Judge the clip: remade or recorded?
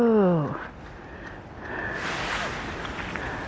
recorded